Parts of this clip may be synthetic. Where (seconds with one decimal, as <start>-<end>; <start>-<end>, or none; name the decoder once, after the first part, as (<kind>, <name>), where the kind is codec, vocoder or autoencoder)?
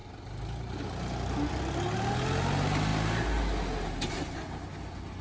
none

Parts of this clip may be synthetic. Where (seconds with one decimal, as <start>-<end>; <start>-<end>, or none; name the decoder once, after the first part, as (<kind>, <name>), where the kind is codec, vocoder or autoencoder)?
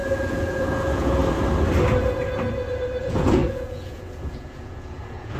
0.0-1.2 (vocoder, Vocos); 3.0-5.4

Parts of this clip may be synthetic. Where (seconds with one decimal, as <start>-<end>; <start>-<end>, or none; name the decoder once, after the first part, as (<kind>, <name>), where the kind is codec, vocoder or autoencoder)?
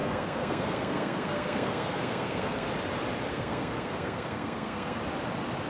0.0-2.7 (codec, SNAC); 3.3-5.0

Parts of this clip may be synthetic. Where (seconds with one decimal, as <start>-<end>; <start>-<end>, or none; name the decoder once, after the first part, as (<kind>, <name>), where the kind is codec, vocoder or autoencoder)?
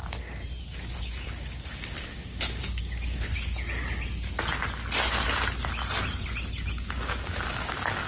0.6-3.3 (codec, DAC); 6.7-8.1